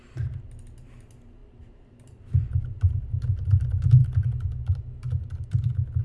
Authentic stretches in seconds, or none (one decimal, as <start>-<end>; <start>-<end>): 0.0-1.4; 2.9-6.0